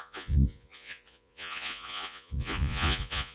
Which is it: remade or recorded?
remade